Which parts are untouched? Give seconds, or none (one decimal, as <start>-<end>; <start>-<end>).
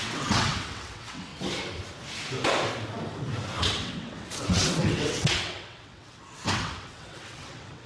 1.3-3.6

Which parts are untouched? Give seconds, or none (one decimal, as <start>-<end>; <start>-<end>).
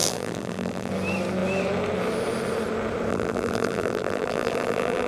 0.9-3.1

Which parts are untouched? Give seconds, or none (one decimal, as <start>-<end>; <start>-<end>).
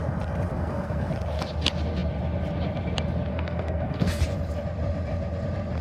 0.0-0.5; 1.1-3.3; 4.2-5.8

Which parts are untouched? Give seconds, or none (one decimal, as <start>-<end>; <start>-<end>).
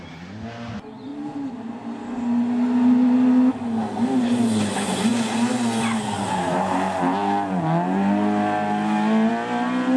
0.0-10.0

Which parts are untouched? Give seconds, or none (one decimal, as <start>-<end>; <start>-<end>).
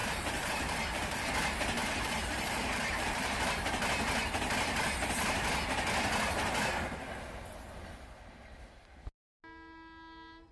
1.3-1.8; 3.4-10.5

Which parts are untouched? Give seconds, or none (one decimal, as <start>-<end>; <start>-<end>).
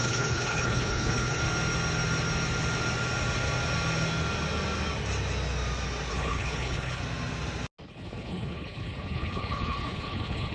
1.4-6.1; 7.0-7.9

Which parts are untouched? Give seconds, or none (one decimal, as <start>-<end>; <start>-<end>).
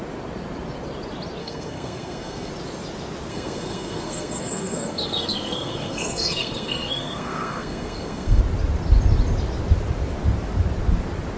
0.0-1.4; 2.5-3.3; 8.4-11.4